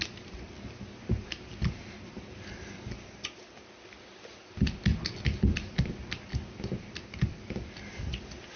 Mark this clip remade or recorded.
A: recorded